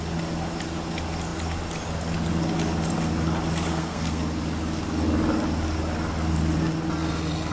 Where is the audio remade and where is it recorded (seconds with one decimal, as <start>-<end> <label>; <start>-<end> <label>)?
0.0-3.7 recorded; 3.7-4.2 remade; 4.2-7.5 recorded